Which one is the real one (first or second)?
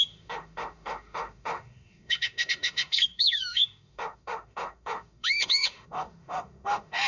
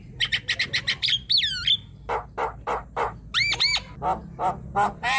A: second